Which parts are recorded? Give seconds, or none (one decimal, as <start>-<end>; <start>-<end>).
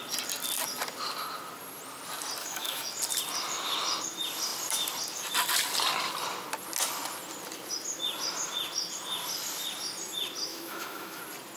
0.0-2.4; 2.9-10.5; 11.2-11.6